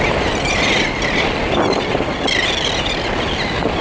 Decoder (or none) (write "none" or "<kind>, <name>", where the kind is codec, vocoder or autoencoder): none